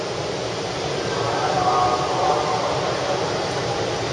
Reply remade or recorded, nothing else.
recorded